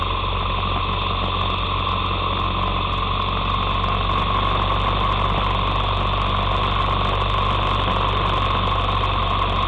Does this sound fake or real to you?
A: real